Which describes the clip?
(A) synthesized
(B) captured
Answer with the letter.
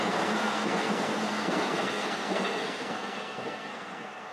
A